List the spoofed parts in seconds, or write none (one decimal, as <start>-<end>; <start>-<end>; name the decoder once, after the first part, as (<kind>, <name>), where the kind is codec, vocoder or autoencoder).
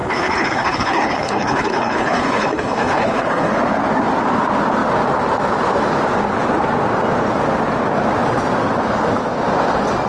0.0-3.5 (codec, HILCodec)